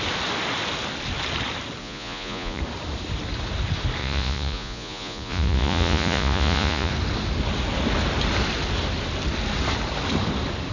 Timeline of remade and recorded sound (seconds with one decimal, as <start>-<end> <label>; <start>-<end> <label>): 0.0-1.8 recorded; 1.8-2.6 remade; 2.6-4.0 recorded; 4.0-6.9 remade; 6.9-10.7 recorded